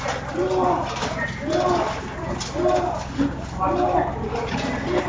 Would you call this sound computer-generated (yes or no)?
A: no